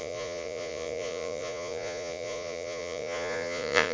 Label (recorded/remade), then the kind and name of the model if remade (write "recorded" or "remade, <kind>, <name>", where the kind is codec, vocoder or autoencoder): remade, vocoder, Vocos